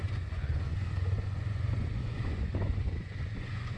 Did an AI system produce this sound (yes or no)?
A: yes